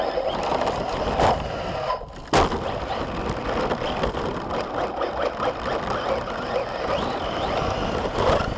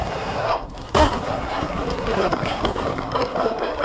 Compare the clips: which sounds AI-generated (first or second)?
second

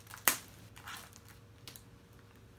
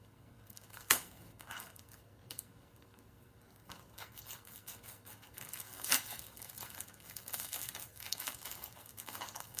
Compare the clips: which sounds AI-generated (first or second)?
second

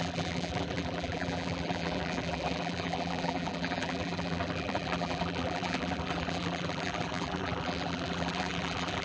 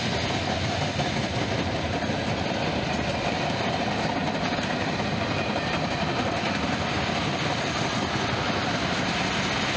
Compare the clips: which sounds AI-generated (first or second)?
first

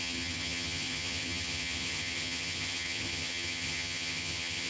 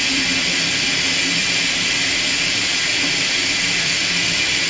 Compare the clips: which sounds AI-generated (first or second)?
first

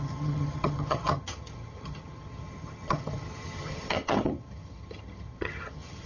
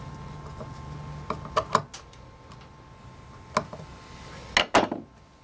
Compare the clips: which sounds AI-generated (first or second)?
first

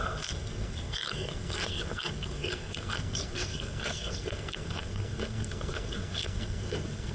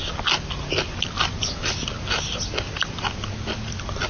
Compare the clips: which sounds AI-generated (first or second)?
first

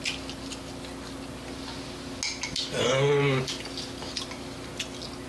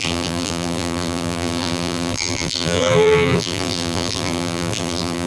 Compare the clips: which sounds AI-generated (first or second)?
second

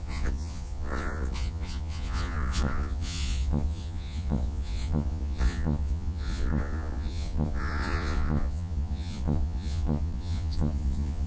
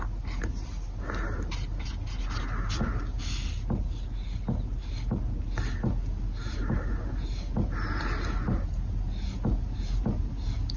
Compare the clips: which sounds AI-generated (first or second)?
first